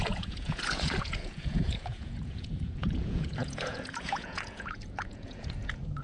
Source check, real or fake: fake